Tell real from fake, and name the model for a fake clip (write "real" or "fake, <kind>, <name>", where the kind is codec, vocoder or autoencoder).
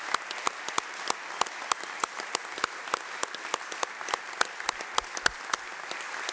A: real